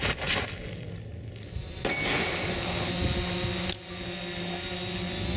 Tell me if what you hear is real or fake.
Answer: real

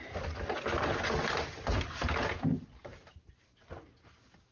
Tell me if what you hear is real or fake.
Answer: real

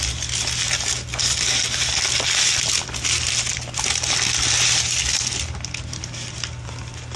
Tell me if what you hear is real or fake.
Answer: real